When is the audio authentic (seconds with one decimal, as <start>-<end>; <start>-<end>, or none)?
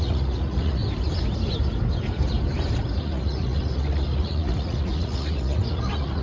0.8-3.0